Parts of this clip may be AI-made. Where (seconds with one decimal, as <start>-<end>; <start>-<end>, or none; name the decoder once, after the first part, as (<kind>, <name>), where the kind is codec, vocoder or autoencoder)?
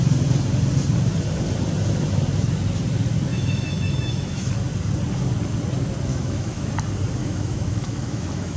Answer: 3.3-4.5 (autoencoder, DAC-VAE); 6.1-6.7; 7.2-8.6